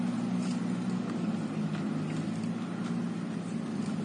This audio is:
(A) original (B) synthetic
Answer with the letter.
A